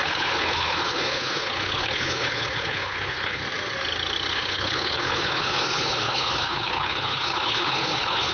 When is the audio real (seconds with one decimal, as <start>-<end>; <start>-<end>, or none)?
3.4-4.3